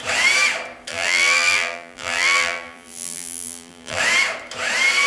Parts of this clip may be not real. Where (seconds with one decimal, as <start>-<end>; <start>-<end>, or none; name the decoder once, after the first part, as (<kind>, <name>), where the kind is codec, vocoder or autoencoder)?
0.9-4.0 (vocoder, BigVGAN v2)